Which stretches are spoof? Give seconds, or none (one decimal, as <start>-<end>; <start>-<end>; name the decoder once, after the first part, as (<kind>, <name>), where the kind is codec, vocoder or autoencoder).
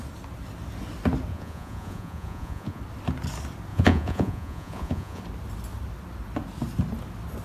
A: 1.3-2.8 (vocoder, Vocos); 3.7-5.2